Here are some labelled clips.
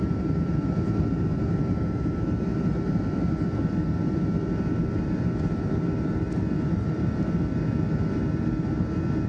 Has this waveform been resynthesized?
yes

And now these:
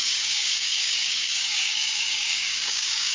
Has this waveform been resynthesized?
yes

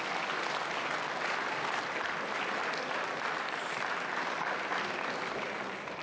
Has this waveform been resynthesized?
no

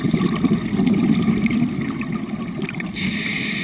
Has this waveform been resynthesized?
no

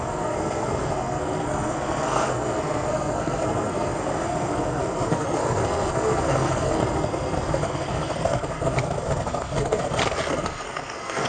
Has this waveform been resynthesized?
yes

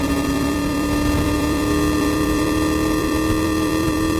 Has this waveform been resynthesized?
yes